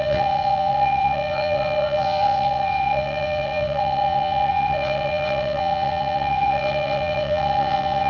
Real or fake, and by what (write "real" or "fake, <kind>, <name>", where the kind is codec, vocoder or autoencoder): fake, vocoder, WaveNeXt